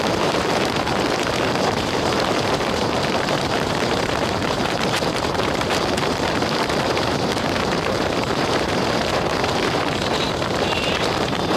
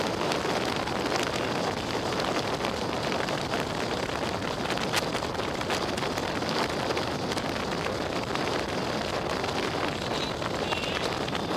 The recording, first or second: second